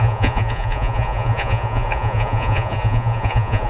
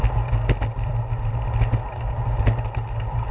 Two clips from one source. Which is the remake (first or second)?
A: first